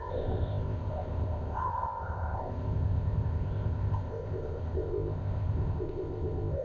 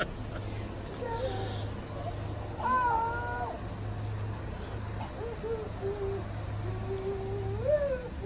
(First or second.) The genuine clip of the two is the second